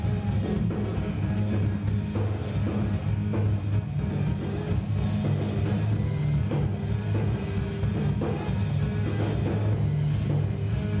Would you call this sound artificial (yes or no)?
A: no